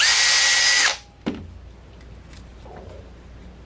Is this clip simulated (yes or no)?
no